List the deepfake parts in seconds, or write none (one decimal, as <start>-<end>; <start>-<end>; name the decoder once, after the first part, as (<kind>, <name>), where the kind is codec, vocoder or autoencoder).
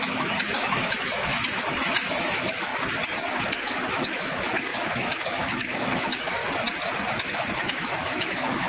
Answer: 0.0-2.7 (autoencoder, DAC-VAE); 3.4-6.4; 7.4-8.7